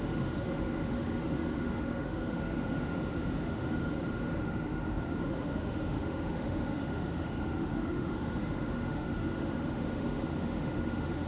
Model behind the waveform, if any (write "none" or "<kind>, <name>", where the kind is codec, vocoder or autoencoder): autoencoder, DAC-VAE